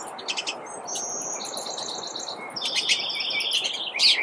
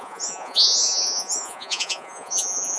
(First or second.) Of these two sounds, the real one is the first